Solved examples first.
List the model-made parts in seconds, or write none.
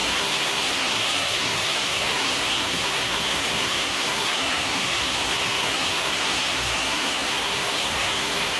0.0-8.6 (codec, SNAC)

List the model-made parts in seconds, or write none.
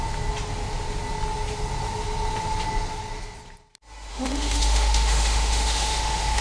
4.1-6.4 (autoencoder, DAC-VAE)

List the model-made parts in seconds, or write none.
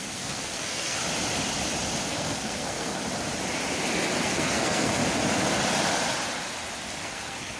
0.0-1.0 (codec, SNAC); 2.1-3.0; 4.2-5.0; 7.0-7.6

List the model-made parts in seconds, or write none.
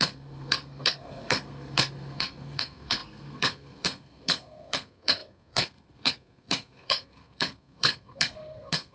0.0-8.9 (codec, SNAC)